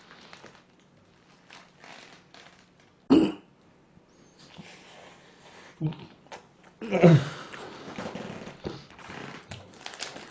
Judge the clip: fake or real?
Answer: real